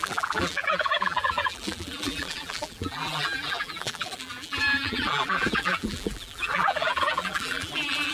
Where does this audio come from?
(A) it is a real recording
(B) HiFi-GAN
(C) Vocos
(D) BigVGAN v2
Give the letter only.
D